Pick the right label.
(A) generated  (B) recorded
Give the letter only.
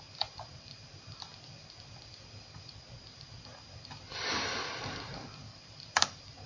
A